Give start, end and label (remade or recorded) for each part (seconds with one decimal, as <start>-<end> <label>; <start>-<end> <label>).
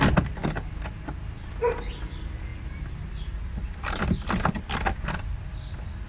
0.0-6.1 recorded